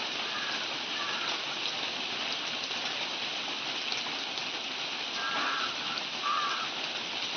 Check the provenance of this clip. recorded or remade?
recorded